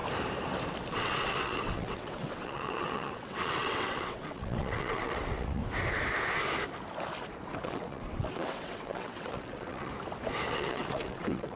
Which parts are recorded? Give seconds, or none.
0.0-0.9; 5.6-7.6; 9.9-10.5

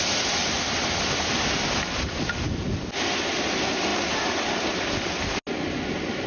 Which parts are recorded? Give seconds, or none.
0.0-6.3

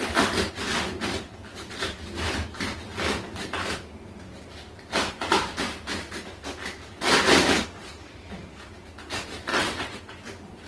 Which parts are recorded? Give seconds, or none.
0.0-9.5; 10.0-10.7

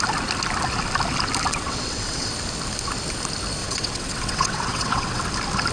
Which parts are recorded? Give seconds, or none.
0.0-1.5; 2.3-3.6; 5.2-5.7

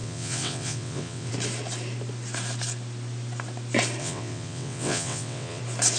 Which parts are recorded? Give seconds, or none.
1.3-4.0; 5.6-6.0

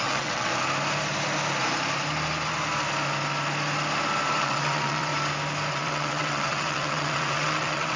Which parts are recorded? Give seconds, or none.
0.5-4.4; 5.1-5.7